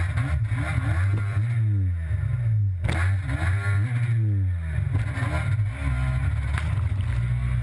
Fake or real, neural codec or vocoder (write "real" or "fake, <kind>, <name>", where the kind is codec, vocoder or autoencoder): real